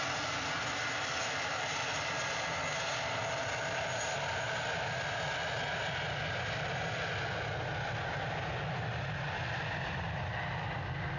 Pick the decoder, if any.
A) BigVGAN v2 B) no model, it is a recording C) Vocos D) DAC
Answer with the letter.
B